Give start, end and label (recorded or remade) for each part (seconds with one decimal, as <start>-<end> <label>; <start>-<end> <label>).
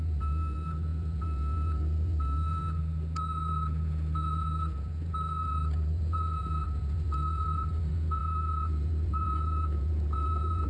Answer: 0.0-10.7 remade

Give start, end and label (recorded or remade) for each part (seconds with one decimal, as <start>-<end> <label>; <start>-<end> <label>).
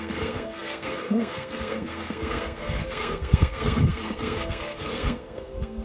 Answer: 0.0-5.8 remade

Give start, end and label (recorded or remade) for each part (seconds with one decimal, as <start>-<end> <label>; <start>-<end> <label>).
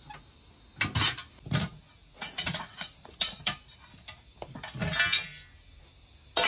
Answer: 0.0-2.0 recorded; 2.0-3.4 remade; 3.4-6.5 recorded